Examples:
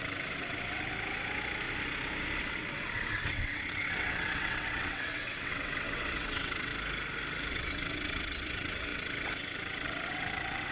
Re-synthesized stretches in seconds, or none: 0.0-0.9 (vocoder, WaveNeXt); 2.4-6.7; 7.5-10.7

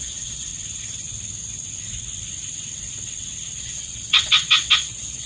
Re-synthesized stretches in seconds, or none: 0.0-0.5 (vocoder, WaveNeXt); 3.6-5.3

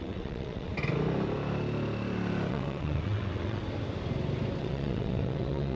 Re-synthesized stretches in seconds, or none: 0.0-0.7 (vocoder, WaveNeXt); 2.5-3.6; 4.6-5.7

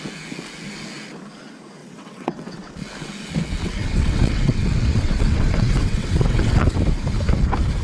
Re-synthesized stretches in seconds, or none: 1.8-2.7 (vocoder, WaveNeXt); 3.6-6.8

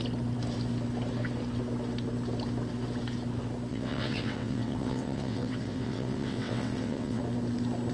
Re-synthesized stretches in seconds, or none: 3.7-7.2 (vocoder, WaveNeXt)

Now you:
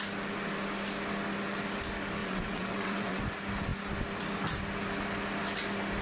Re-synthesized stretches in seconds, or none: 2.2-3.2 (vocoder, WaveNeXt)

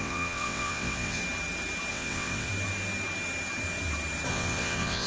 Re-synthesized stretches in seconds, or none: 0.0-1.2 (vocoder, WaveNeXt); 1.9-2.5; 4.3-5.1